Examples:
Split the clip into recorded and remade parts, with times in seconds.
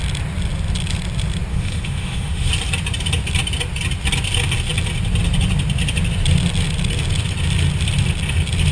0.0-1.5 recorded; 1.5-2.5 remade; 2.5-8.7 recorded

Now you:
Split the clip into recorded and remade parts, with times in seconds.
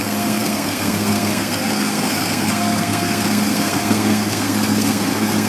0.0-5.5 remade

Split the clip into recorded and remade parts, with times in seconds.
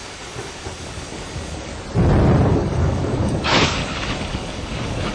0.0-1.7 remade; 1.7-2.5 recorded; 2.5-5.1 remade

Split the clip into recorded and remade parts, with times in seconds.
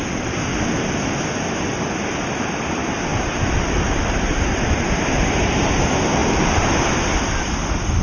0.0-0.5 remade; 0.5-2.5 recorded; 2.5-6.2 remade; 6.2-8.0 recorded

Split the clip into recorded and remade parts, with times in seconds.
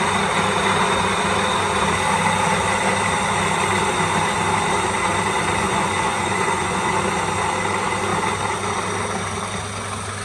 0.0-5.6 recorded; 5.6-7.0 remade; 7.0-10.2 recorded